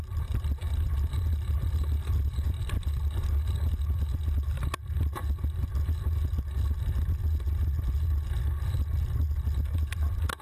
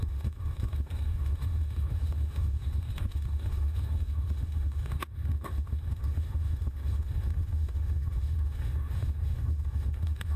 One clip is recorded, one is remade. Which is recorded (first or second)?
first